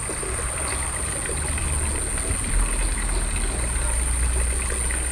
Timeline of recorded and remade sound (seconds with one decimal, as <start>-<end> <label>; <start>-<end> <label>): 0.0-5.1 recorded